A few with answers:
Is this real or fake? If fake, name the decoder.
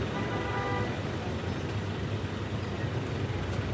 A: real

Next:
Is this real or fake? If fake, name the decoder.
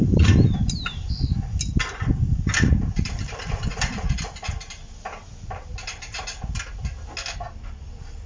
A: real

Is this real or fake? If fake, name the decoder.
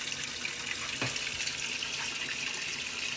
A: real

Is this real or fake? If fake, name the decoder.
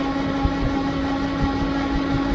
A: real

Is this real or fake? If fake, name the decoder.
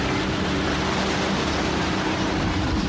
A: real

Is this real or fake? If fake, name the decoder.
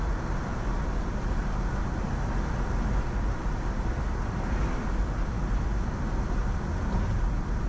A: real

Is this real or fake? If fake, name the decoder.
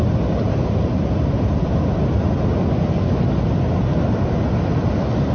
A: real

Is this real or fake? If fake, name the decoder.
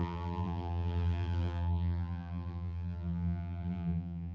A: fake, vocoder, BigVGAN v2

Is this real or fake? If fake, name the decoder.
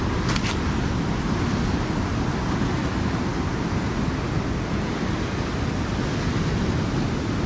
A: real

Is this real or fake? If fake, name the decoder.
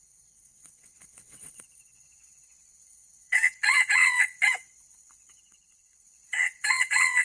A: fake, vocoder, WaveNeXt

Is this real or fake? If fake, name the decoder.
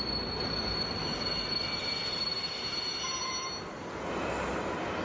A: real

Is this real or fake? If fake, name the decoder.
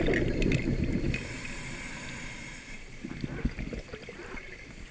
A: real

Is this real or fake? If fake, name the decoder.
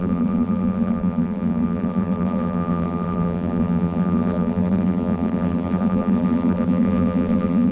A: fake, vocoder, BigVGAN v2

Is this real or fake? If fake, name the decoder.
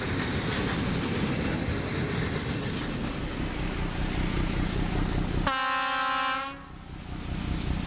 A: real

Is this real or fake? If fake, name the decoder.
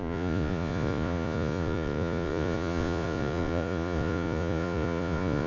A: fake, vocoder, Vocos